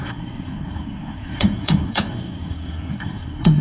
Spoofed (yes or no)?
yes